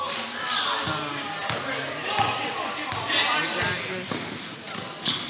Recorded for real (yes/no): yes